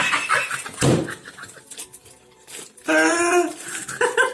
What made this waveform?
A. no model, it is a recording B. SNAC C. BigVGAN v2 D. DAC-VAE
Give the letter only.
A